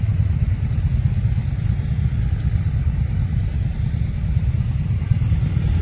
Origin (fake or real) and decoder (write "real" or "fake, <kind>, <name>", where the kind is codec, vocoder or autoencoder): real